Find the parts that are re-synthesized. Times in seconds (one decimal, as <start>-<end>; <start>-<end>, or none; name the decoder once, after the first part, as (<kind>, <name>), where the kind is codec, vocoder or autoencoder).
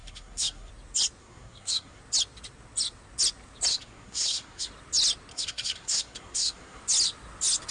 0.0-0.7 (codec, SNAC); 1.2-2.0; 3.7-4.7; 5.3-6.8